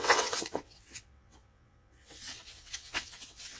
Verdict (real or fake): fake